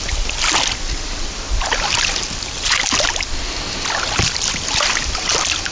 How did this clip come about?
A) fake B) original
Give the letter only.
B